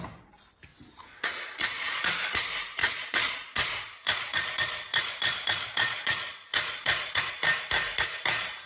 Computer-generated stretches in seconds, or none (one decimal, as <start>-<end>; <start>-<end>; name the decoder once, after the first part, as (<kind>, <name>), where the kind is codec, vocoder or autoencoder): 0.7-2.0 (vocoder, Vocos); 2.8-7.2